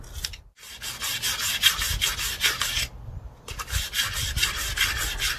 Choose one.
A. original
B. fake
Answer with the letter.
A